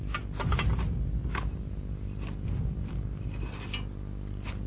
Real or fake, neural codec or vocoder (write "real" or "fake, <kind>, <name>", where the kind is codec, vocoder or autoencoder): real